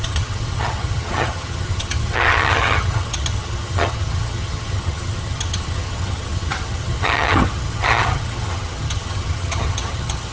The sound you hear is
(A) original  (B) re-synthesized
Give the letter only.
B